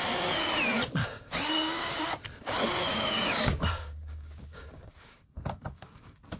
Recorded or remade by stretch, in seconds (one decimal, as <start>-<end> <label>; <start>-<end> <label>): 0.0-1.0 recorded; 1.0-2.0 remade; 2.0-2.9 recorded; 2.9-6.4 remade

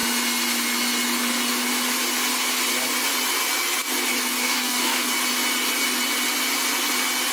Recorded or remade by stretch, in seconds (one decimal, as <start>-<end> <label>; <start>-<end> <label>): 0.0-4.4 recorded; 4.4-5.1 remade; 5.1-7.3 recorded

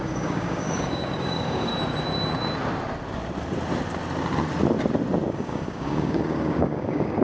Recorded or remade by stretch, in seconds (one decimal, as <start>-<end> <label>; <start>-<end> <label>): 0.0-1.7 remade; 1.7-5.3 recorded; 5.3-7.2 remade